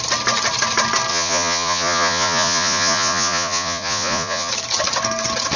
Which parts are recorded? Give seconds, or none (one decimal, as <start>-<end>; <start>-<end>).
0.0-1.1; 4.5-5.6